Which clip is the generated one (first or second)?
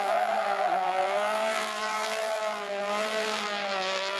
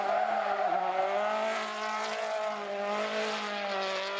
first